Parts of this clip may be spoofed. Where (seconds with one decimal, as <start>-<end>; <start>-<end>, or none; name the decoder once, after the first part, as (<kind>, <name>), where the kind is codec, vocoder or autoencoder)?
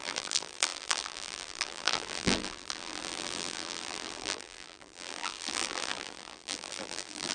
0.0-7.3 (vocoder, BigVGAN v2)